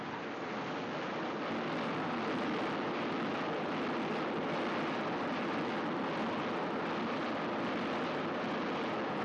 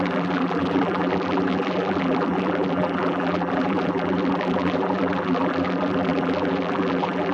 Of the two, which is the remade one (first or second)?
second